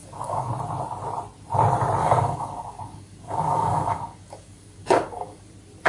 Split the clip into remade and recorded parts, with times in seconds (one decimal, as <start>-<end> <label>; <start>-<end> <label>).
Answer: 0.0-0.5 remade; 0.5-2.0 recorded; 2.0-5.5 remade; 5.5-5.9 recorded